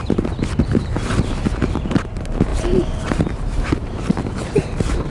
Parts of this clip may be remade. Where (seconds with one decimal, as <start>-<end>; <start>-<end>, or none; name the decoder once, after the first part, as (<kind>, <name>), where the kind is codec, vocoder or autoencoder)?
2.5-4.1 (vocoder, BigVGAN v2)

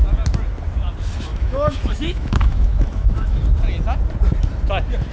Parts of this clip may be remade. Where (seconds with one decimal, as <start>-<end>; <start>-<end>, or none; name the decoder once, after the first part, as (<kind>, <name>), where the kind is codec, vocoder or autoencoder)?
1.3-3.4 (autoencoder, DAC-VAE)

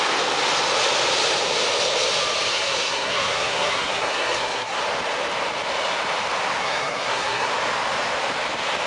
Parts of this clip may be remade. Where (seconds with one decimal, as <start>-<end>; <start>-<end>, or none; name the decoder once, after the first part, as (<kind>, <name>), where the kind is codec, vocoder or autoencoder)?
2.5-4.8 (codec, SNAC); 6.6-7.5